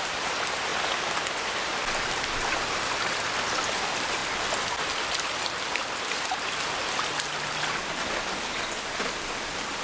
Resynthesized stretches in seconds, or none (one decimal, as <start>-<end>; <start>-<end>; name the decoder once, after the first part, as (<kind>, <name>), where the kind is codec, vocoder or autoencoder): none